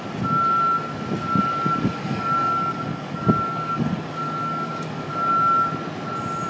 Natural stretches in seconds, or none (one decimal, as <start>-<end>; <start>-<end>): 0.0-1.4; 5.3-6.5